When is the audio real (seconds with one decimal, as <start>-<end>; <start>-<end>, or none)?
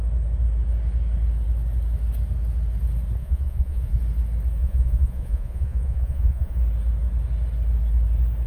0.0-3.2; 4.0-4.6; 6.6-8.5